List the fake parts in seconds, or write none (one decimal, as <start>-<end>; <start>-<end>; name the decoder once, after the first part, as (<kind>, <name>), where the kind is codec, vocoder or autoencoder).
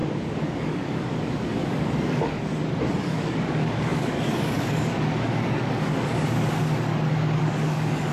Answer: 0.0-2.5 (codec, DAC); 3.0-8.1